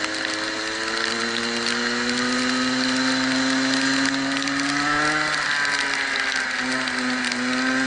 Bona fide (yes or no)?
yes